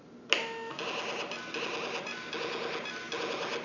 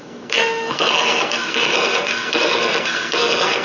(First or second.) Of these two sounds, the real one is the first